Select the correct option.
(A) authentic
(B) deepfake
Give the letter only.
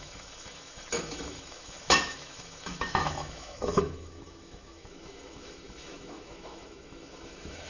B